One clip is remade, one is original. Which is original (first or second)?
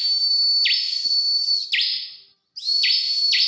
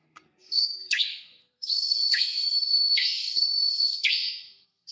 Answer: first